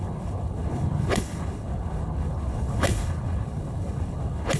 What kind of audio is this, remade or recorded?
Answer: remade